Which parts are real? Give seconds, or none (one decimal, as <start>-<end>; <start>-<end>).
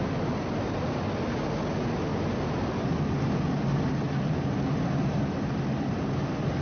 0.0-6.6